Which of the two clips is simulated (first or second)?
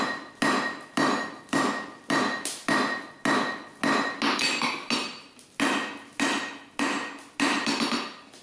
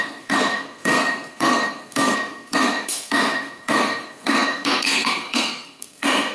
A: second